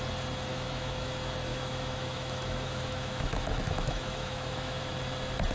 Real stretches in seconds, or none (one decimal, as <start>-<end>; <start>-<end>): 0.0-0.5; 1.1-1.5; 4.8-5.5